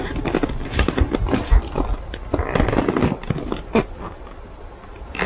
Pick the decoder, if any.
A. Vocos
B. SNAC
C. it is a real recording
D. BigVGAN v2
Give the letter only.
C